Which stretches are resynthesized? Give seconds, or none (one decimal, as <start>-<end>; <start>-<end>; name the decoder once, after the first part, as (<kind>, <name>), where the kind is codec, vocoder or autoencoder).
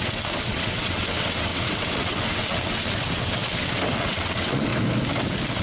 0.0-4.7 (vocoder, WaveNeXt)